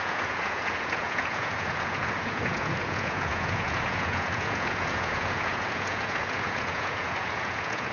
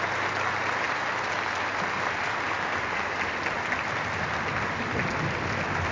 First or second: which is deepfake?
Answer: first